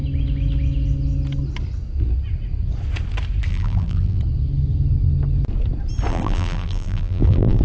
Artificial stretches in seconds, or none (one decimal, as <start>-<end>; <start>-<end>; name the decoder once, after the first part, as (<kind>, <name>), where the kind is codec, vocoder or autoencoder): 3.5-4.2 (vocoder, BigVGAN v2); 6.1-7.6